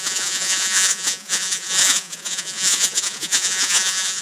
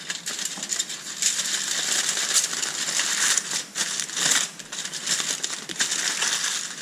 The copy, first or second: first